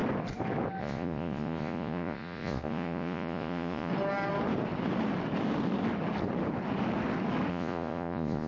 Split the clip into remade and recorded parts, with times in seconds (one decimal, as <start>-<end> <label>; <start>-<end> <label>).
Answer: 0.0-0.8 recorded; 0.8-3.9 remade; 3.9-7.5 recorded; 7.5-8.5 remade